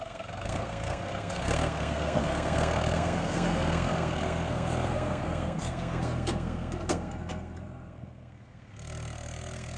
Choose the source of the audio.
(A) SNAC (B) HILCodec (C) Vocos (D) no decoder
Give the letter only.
A